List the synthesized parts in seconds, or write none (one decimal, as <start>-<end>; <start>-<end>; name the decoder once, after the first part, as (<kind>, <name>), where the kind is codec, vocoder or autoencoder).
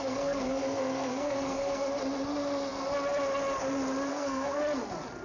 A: 0.0-1.9 (codec, SNAC); 4.1-4.6